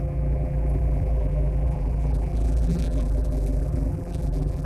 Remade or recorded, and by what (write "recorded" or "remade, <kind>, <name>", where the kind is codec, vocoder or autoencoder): remade, vocoder, BigVGAN v2